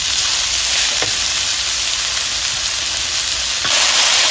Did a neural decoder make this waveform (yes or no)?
no